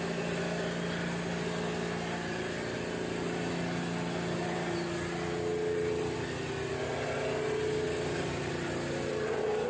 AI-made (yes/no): no